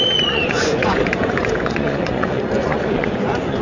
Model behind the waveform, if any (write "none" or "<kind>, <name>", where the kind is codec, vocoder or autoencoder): vocoder, Vocos